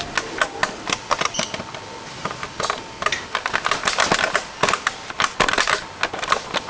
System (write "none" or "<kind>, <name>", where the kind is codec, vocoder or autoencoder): none